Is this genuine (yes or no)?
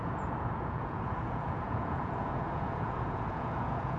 no